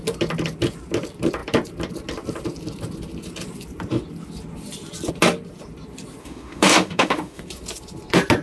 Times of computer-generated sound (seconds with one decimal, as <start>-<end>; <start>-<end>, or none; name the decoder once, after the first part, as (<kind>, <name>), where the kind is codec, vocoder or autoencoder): 6.2-7.4 (autoencoder, DAC-VAE)